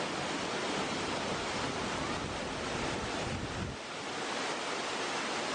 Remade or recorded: recorded